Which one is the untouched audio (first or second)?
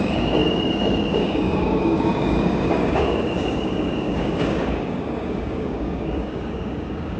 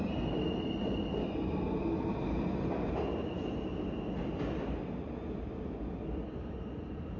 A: second